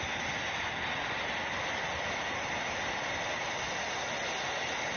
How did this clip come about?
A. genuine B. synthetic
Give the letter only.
A